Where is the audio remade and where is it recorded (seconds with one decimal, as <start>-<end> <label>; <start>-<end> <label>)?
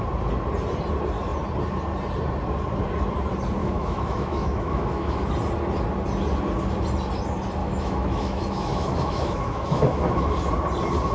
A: 0.0-3.6 recorded; 3.6-5.3 remade; 5.3-7.6 recorded; 7.6-10.5 remade; 10.5-11.1 recorded